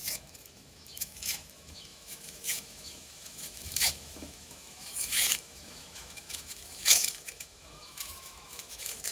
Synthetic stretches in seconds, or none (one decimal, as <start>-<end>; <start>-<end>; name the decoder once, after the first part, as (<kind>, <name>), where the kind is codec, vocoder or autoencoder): 0.0-9.1 (autoencoder, DAC-VAE)